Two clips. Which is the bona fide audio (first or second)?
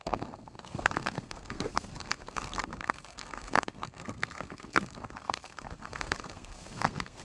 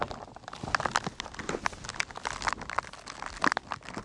second